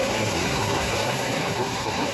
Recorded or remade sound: remade